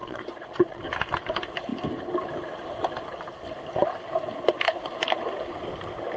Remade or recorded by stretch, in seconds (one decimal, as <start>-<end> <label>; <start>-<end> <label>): 0.0-0.8 remade; 0.8-6.2 recorded

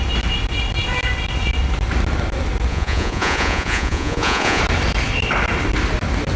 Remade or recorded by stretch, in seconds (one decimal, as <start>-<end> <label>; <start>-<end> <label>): 0.0-2.7 recorded; 2.7-4.6 remade; 4.6-6.4 recorded

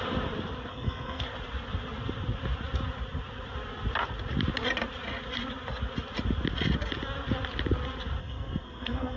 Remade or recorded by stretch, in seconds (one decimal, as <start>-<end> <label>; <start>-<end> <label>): 0.0-0.7 recorded; 0.7-1.2 remade; 1.2-8.2 recorded; 8.2-9.2 remade

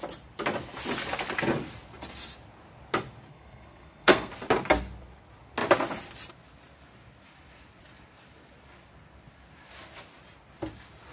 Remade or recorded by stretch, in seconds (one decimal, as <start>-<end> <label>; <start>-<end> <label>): 0.0-3.3 recorded; 3.3-4.3 remade; 4.3-11.1 recorded

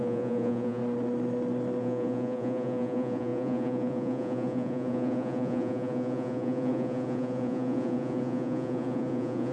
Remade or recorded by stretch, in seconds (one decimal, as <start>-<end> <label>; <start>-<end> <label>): 0.0-0.8 remade; 0.8-1.8 recorded; 1.8-9.5 remade

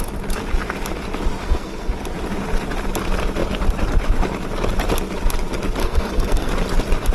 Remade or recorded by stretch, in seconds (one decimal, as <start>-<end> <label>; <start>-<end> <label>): 0.0-1.4 recorded; 1.4-1.9 remade; 1.9-5.8 recorded; 5.8-6.5 remade; 6.5-7.1 recorded

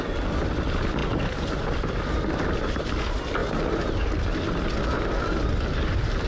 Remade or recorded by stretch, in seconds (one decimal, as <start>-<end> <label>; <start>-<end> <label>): 0.0-6.3 recorded